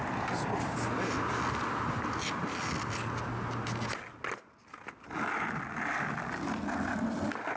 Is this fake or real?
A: real